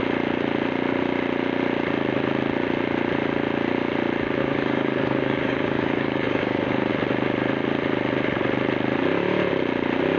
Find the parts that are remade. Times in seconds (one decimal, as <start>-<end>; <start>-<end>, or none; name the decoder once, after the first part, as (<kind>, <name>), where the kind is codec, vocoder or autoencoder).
4.4-6.9 (codec, DAC)